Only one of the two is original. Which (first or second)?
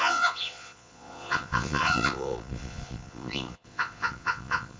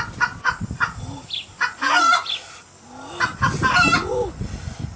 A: second